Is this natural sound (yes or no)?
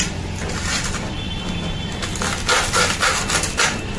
yes